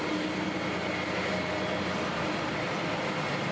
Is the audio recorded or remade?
recorded